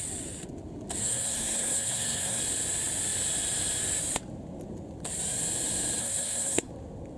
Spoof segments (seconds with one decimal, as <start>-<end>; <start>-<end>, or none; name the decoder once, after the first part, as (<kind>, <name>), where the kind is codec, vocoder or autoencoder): 1.0-2.4 (codec, SNAC); 6.0-6.7